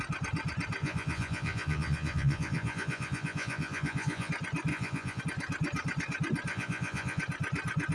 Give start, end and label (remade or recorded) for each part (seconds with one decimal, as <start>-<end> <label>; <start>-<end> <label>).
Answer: 0.0-0.8 recorded; 0.8-4.3 remade; 4.3-4.7 recorded; 4.7-5.2 remade; 5.2-6.5 recorded; 6.5-7.2 remade; 7.2-7.9 recorded